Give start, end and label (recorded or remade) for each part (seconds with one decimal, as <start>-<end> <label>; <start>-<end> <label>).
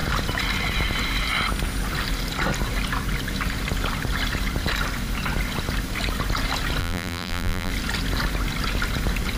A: 0.0-6.8 recorded; 6.8-7.7 remade; 7.7-9.4 recorded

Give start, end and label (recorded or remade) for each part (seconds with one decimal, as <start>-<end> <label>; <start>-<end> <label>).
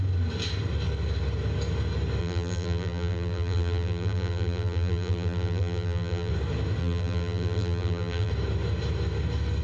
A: 0.0-2.2 recorded; 2.2-6.3 remade; 6.3-6.8 recorded; 6.8-8.3 remade; 8.3-9.6 recorded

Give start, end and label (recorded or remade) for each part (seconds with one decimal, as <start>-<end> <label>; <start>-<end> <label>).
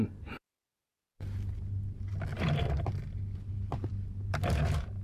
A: 0.0-5.0 recorded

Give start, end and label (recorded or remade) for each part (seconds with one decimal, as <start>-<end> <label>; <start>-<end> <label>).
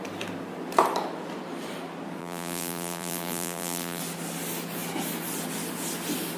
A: 0.0-2.2 recorded; 2.2-4.0 remade; 4.0-6.4 recorded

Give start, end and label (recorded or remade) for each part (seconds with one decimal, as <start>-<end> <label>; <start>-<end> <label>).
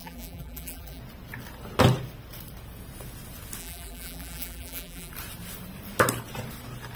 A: 0.0-1.0 remade; 1.0-3.6 recorded; 3.6-5.1 remade; 5.1-7.0 recorded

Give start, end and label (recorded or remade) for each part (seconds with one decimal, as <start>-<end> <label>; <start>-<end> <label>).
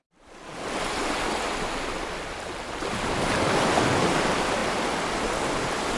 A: 0.0-4.6 remade; 4.6-6.0 recorded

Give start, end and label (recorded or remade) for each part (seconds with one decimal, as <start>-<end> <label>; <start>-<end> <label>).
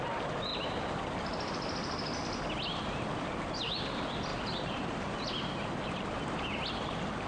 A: 0.0-7.3 recorded